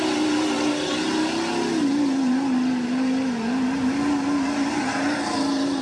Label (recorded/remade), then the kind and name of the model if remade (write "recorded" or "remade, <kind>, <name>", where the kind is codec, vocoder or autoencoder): recorded